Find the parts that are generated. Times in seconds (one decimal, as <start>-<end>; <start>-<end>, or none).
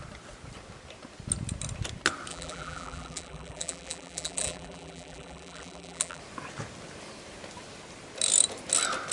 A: 2.3-6.2